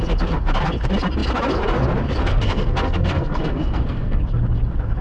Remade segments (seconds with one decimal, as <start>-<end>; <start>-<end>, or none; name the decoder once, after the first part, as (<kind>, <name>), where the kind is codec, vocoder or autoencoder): 2.2-4.2 (codec, SNAC)